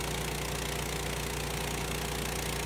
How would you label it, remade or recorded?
recorded